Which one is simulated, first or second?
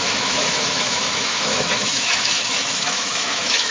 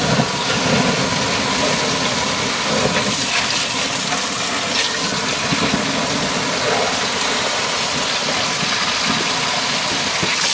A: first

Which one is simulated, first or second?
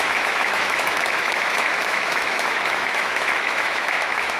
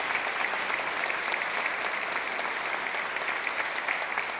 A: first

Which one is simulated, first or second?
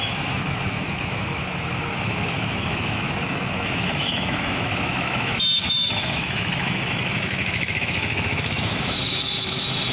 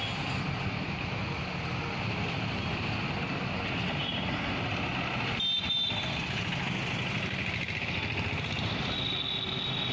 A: first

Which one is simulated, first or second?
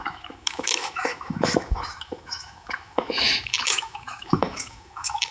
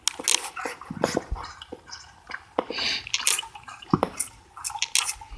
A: first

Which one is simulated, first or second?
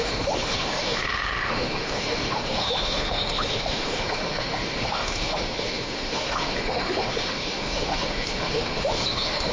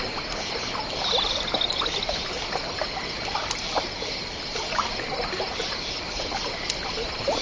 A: first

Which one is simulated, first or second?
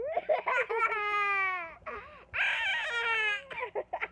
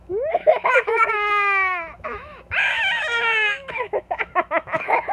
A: second